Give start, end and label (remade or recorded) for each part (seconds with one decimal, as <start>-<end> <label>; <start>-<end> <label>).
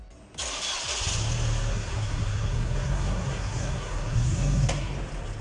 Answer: 0.0-1.7 recorded; 1.7-4.9 remade; 4.9-5.4 recorded